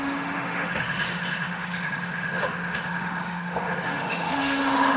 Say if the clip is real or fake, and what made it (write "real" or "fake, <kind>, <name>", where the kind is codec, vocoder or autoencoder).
fake, autoencoder, DAC-VAE